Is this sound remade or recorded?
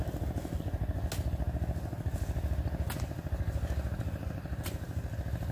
recorded